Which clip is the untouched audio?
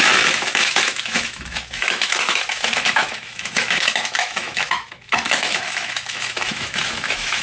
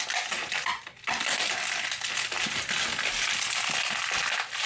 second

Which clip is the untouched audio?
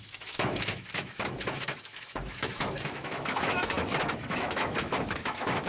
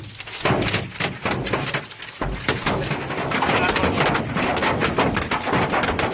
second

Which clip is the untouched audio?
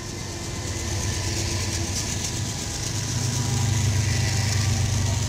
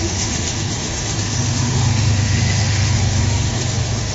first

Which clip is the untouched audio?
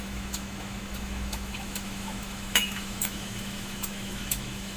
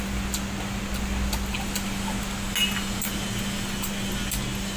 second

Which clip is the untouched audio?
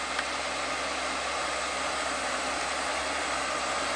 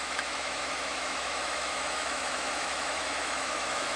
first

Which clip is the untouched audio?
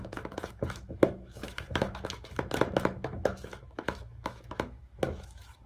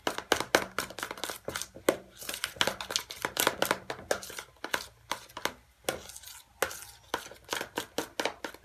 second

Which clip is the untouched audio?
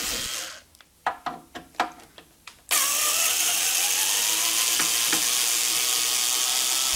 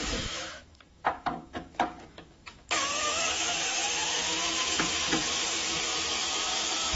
first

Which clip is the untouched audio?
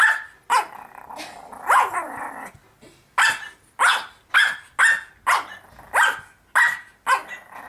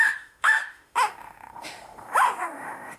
first